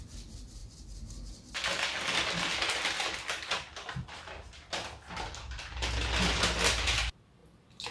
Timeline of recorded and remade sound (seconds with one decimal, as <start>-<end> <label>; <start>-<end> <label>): 0.0-7.9 recorded